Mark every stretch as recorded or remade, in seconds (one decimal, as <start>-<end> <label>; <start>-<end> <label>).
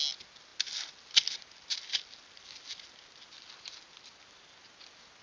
0.0-5.2 recorded